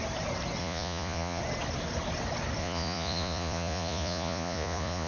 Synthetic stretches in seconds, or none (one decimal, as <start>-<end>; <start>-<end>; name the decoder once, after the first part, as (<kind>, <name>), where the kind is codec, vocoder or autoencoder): 0.6-1.4 (vocoder, Vocos); 2.6-5.1